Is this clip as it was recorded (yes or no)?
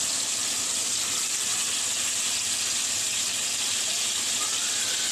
yes